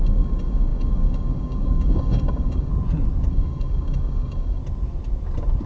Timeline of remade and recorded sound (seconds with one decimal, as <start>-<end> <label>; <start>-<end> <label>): 0.0-2.7 remade; 2.7-3.3 recorded; 3.3-4.6 remade; 4.6-5.7 recorded